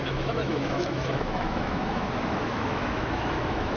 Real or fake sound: fake